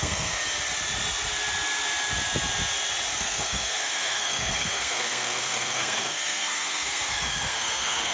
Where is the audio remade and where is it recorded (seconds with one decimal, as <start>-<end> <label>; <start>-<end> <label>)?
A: 0.0-0.4 remade; 0.4-3.2 recorded; 3.2-8.1 remade